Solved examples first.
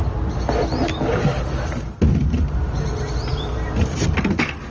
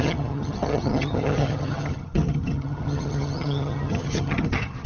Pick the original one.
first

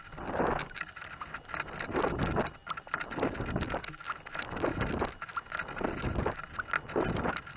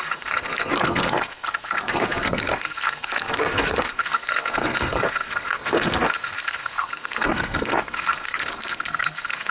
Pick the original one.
first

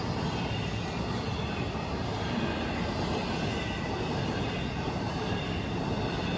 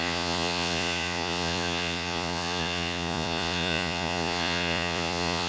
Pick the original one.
first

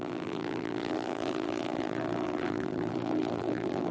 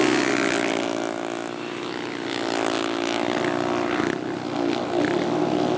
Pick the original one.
second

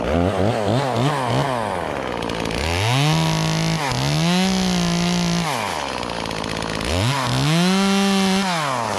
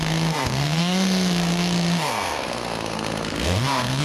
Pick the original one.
first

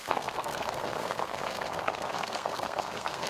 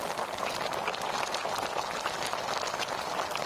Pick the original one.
second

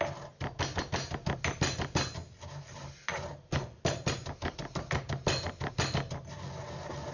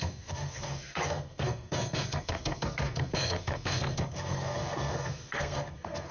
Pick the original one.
first